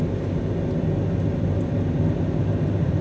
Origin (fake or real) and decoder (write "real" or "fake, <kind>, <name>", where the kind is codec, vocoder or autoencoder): real